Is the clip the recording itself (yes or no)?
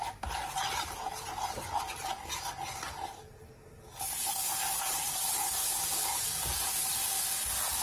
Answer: yes